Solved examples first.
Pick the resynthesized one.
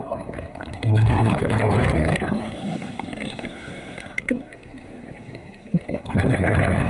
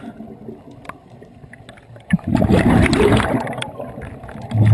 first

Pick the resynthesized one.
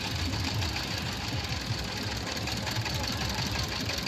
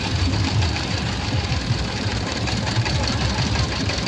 second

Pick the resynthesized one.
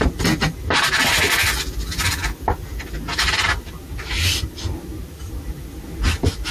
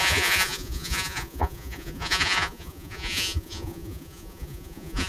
second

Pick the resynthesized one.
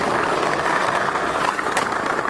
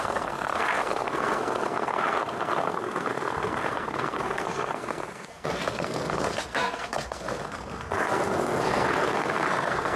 second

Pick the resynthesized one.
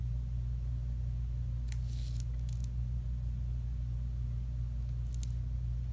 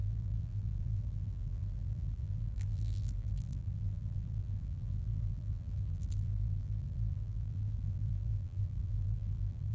second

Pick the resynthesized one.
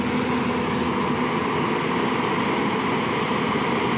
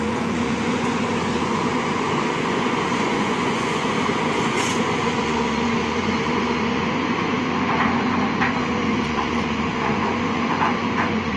second